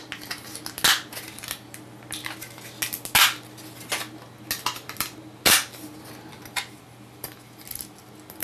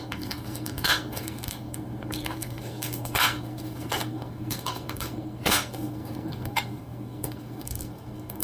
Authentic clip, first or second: first